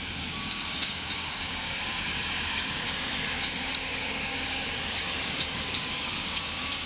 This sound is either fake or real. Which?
fake